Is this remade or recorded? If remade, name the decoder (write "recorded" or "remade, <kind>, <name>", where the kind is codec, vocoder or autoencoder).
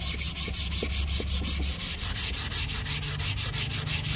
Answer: recorded